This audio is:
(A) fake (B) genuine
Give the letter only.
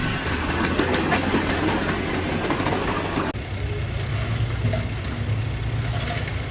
B